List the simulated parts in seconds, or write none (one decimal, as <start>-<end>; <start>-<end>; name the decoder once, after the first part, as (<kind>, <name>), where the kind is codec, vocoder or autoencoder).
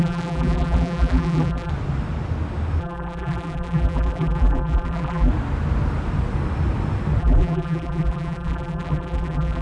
0.0-1.7 (vocoder, BigVGAN v2); 2.8-5.3; 7.2-9.6